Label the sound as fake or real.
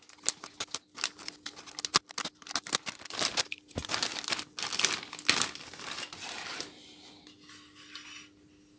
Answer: real